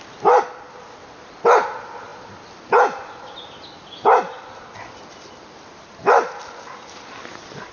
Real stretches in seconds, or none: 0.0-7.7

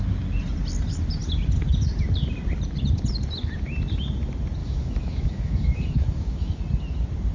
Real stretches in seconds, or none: 0.0-4.6; 6.6-7.3

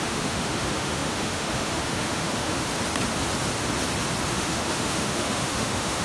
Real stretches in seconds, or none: 2.7-4.3

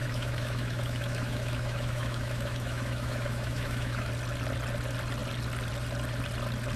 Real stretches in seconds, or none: 4.1-6.8

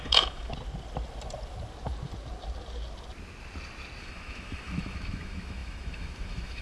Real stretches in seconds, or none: 0.5-4.0

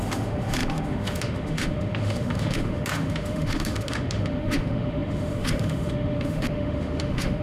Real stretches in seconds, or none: none

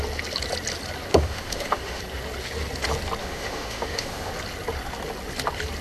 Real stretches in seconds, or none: 0.0-1.1; 2.0-3.2; 4.3-5.8